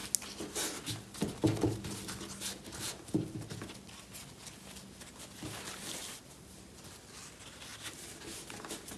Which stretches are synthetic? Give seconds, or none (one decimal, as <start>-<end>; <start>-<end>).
none